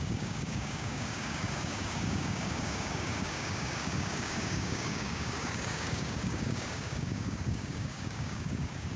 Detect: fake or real fake